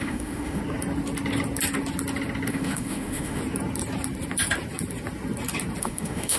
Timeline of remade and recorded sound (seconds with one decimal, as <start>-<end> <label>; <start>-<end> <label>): 0.0-0.6 remade; 0.6-2.5 recorded; 2.5-3.4 remade; 3.4-5.8 recorded; 5.8-6.4 remade